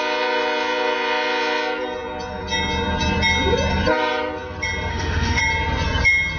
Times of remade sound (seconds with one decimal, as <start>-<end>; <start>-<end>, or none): 4.9-5.4

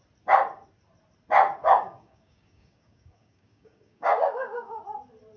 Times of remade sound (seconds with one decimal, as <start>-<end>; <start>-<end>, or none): 1.6-4.8